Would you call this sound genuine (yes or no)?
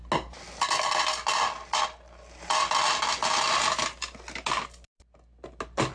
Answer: yes